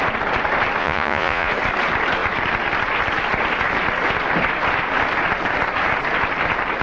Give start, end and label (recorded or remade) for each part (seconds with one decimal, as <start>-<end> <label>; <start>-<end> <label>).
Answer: 0.0-0.8 recorded; 0.8-1.5 remade; 1.5-6.8 recorded